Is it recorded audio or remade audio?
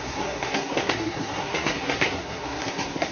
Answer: remade